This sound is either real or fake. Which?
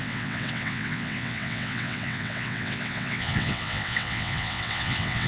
fake